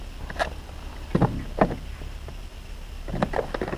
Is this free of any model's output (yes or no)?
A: yes